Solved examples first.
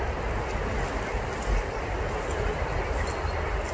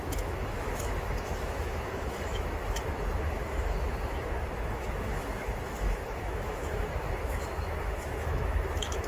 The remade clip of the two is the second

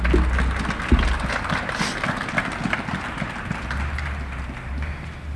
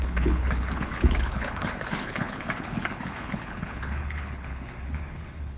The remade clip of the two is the second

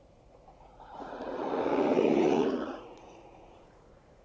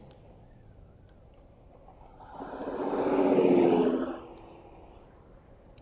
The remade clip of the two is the first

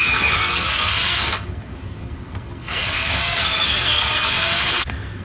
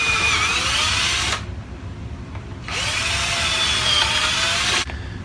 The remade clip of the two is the first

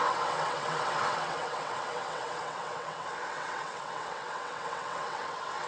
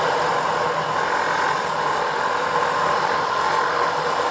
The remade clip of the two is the first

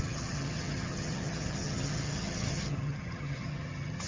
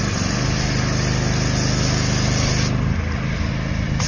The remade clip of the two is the first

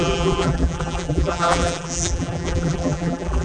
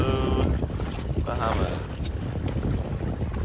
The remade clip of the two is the first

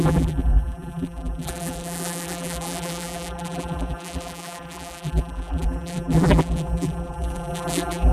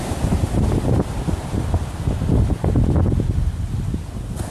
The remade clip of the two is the first